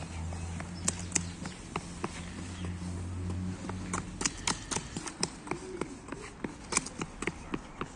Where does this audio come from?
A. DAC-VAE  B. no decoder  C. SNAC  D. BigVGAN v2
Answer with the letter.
B